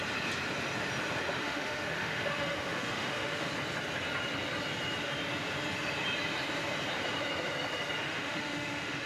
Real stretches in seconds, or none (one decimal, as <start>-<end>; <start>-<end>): 0.0-1.4; 3.5-8.0